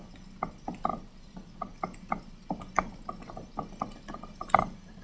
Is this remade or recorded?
recorded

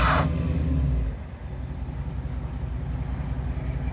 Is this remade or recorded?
recorded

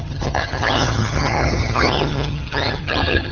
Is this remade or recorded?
remade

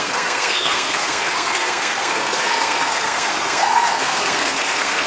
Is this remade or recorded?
remade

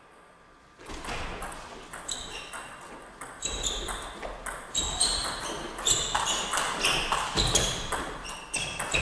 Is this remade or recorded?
recorded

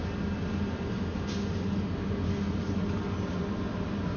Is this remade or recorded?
recorded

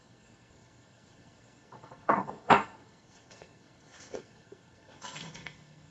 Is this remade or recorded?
remade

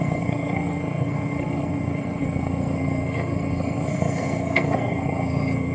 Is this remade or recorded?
remade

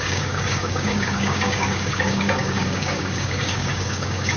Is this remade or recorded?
remade